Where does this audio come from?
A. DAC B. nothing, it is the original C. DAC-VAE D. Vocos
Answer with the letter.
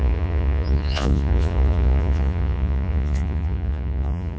D